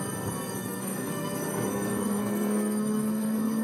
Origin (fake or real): fake